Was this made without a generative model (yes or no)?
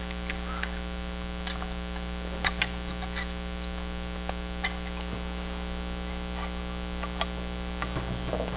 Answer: yes